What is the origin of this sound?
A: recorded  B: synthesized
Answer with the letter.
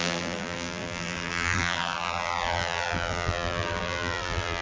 B